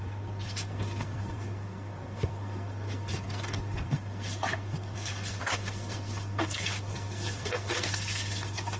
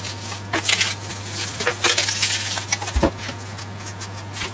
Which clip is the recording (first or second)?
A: second